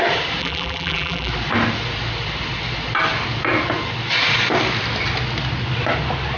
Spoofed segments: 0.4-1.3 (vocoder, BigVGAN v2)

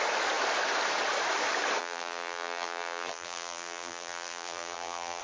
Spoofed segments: 1.8-5.2 (vocoder, BigVGAN v2)